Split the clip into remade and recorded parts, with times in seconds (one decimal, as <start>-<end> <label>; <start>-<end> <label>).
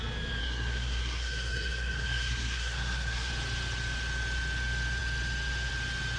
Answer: 0.0-0.4 recorded; 0.4-3.3 remade; 3.3-6.2 recorded